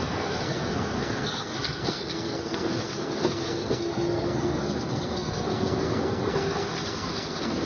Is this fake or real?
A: fake